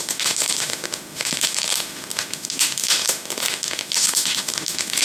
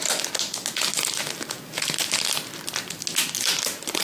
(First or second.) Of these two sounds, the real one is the second